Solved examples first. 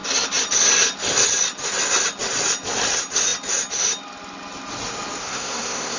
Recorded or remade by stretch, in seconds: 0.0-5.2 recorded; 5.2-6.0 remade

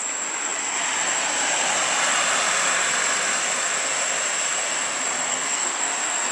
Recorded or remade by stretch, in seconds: 0.0-5.3 recorded; 5.3-5.8 remade; 5.8-6.3 recorded

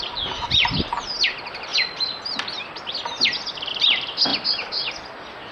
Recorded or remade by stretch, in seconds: 0.0-5.5 recorded

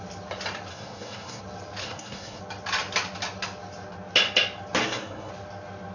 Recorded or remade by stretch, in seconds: 0.0-0.7 recorded; 0.7-1.4 remade; 1.4-1.8 recorded; 1.8-2.4 remade; 2.4-4.8 recorded; 4.8-5.3 remade; 5.3-5.9 recorded